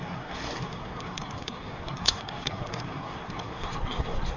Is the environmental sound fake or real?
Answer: fake